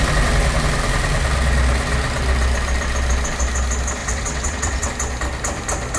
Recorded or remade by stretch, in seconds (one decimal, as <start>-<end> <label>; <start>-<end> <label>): 0.0-4.0 recorded; 4.0-4.9 remade; 4.9-6.0 recorded